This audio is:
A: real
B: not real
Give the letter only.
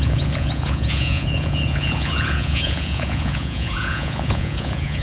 B